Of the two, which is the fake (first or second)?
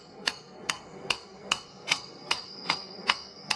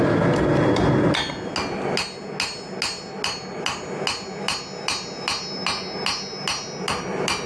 first